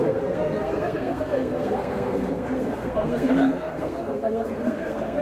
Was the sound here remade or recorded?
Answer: remade